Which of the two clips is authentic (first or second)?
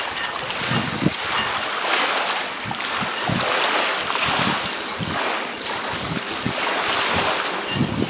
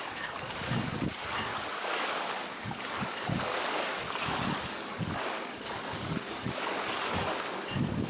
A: first